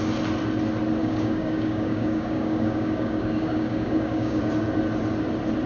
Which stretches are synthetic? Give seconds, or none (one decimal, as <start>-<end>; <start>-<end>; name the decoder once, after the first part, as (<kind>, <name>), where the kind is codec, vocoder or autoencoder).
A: 1.0-4.4 (codec, DAC)